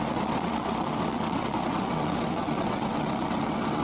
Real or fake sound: fake